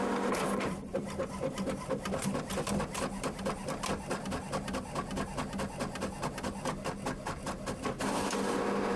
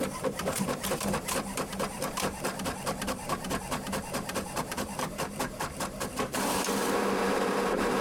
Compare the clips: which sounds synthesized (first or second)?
second